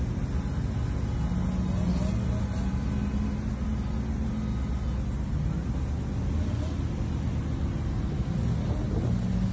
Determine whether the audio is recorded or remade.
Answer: recorded